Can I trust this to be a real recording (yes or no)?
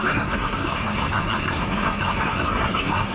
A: no